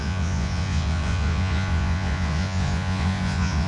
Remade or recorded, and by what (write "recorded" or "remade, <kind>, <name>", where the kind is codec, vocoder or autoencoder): remade, vocoder, Vocos